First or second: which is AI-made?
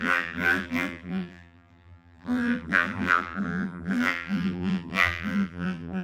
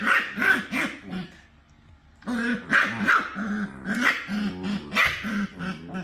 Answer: first